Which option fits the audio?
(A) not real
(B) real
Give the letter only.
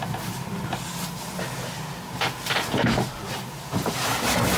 B